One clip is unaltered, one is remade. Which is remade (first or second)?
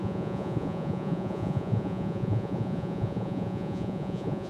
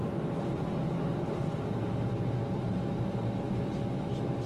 first